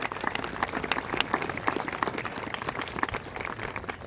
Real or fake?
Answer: real